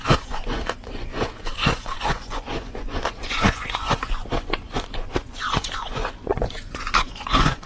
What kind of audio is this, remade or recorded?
remade